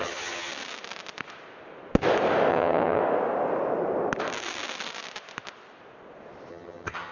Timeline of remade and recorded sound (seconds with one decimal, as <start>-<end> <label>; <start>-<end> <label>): 0.0-0.5 remade; 0.5-2.5 recorded; 2.5-3.0 remade; 3.0-6.5 recorded; 6.5-7.1 remade